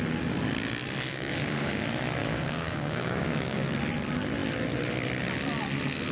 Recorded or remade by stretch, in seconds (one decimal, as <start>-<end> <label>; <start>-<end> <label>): 0.0-1.1 recorded; 1.1-1.8 remade; 1.8-2.2 recorded; 2.2-3.6 remade; 3.6-6.1 recorded